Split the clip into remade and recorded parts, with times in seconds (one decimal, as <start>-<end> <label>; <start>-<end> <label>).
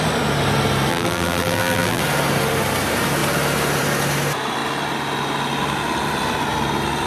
0.0-0.9 recorded; 0.9-2.0 remade; 2.0-7.1 recorded